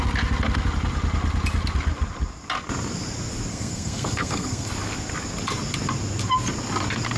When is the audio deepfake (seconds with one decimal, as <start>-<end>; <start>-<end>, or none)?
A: 3.5-4.7